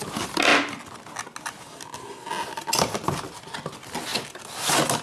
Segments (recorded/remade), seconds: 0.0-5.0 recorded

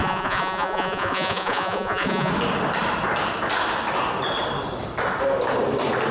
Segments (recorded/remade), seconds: 0.0-2.3 remade; 2.3-6.1 recorded

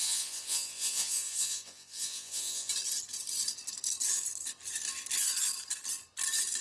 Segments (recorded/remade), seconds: 0.0-2.7 remade; 2.7-6.6 recorded

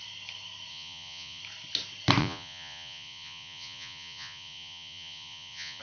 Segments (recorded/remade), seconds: 0.0-0.7 recorded; 0.7-1.4 remade; 1.4-2.2 recorded; 2.2-5.8 remade

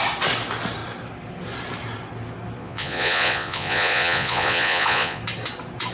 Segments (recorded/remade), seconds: 0.0-2.6 recorded; 2.6-5.2 remade; 5.2-5.9 recorded

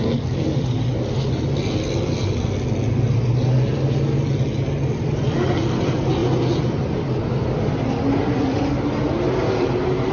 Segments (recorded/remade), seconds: 0.0-10.1 recorded